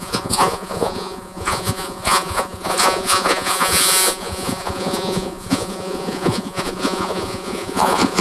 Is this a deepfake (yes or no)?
yes